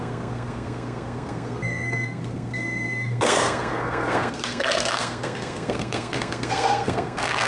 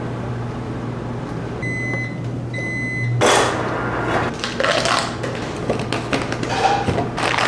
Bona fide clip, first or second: second